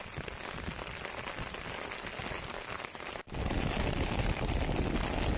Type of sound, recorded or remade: recorded